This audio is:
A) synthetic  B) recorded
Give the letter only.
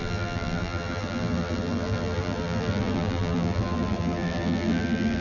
A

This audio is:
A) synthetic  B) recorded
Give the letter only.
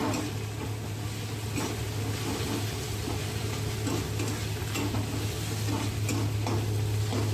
B